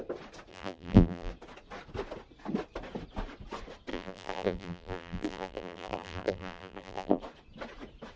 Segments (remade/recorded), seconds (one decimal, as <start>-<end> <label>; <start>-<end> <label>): 0.0-0.5 recorded; 0.5-1.3 remade; 1.3-3.9 recorded; 3.9-7.2 remade; 7.2-8.2 recorded